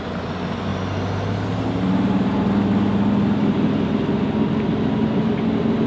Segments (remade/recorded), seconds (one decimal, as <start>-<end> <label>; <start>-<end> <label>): 0.0-5.9 recorded

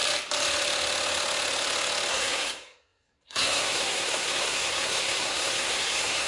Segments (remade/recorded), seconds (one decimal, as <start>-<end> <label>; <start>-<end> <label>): 0.0-2.1 recorded; 2.1-6.3 remade

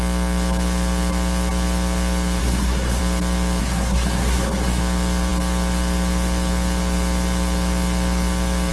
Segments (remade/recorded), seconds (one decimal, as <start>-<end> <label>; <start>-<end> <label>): 0.0-2.4 recorded; 2.4-3.0 remade; 3.0-3.6 recorded; 3.6-4.8 remade; 4.8-8.7 recorded

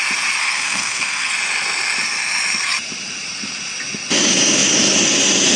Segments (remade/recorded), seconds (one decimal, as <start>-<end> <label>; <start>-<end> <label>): 0.0-0.4 recorded; 0.4-1.3 remade; 1.3-5.6 recorded

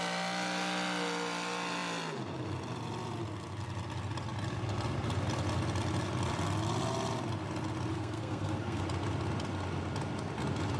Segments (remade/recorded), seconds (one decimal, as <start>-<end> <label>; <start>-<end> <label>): 0.0-7.9 recorded; 7.9-8.8 remade; 8.8-10.8 recorded

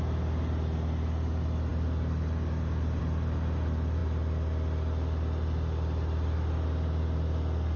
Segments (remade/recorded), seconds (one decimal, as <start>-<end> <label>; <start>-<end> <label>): 0.0-7.8 recorded